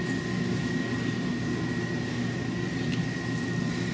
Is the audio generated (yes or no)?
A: no